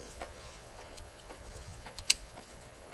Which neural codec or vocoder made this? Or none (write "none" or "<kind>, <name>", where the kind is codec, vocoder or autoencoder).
vocoder, Vocos